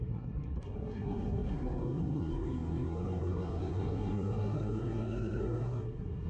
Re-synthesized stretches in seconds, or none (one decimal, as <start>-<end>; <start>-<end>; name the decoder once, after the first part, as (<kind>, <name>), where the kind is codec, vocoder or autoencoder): 0.0-6.3 (codec, SNAC)